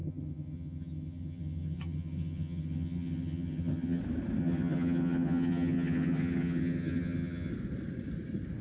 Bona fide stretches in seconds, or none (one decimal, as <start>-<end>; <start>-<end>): 4.0-4.4; 7.5-8.6